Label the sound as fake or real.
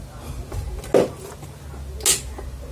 real